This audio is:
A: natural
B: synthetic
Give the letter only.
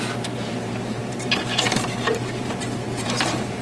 B